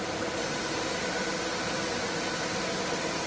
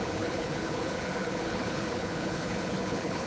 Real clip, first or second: first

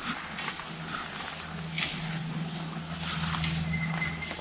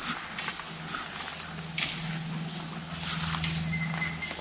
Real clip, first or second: second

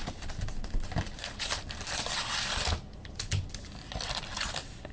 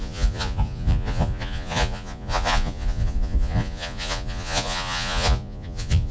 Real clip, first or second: first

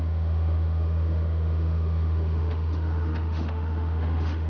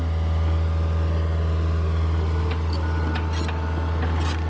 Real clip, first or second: second